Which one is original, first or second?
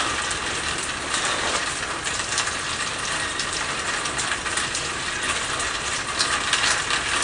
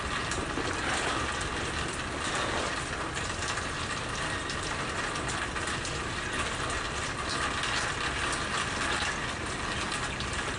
second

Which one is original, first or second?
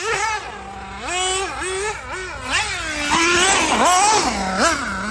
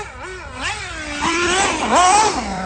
first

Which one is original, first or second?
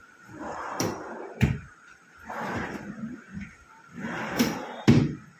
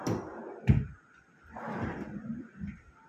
second